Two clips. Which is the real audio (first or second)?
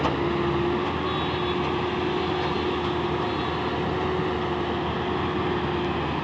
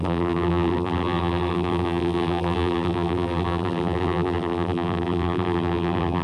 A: first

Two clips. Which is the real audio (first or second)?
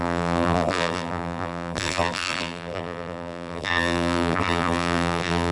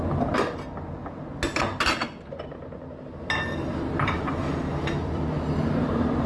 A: second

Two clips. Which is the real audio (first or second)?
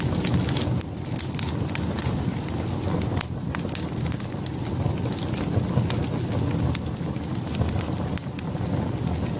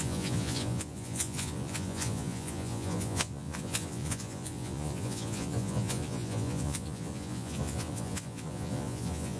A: first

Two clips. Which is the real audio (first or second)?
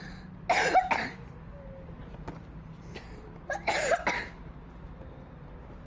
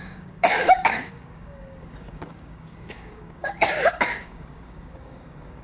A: first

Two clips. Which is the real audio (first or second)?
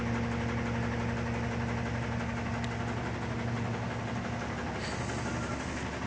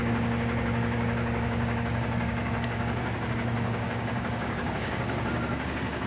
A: first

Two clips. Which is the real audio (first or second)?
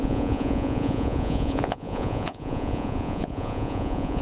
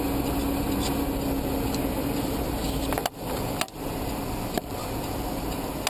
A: second